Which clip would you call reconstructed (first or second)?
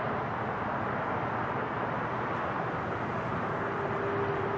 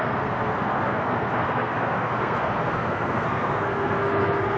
second